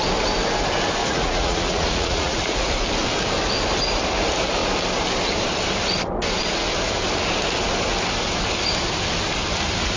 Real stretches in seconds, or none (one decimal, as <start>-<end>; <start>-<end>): 0.0-1.0; 2.7-10.0